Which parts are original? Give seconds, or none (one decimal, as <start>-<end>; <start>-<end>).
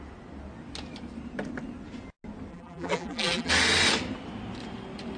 0.0-2.5; 3.5-5.2